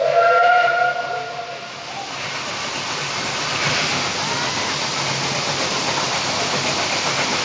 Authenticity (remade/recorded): recorded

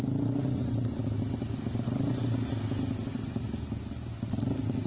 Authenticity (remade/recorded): recorded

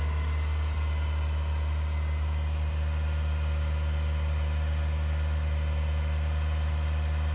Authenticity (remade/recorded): recorded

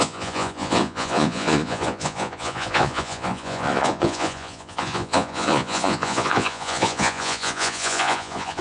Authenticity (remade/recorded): remade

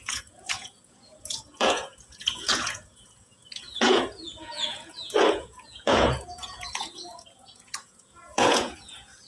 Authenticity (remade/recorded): remade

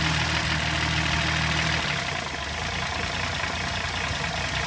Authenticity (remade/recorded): recorded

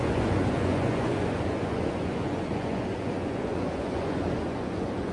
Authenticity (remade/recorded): remade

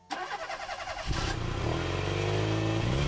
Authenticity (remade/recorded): recorded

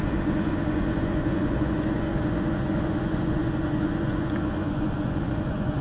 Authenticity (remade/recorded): remade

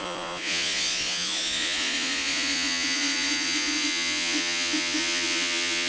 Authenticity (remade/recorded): remade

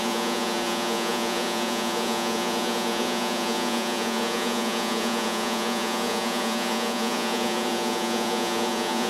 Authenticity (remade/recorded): remade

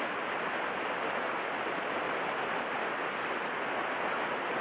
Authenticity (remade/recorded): recorded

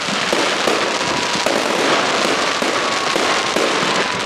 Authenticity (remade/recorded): recorded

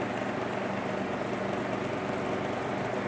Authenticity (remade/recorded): recorded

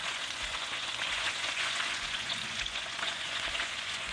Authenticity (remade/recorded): remade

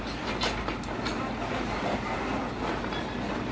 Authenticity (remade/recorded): recorded